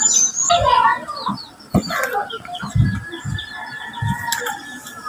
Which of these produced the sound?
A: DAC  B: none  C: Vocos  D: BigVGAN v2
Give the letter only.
B